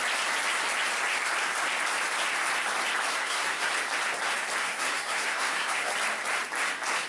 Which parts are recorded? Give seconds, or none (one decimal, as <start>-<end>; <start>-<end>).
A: 0.0-3.1; 3.7-4.6; 5.9-7.1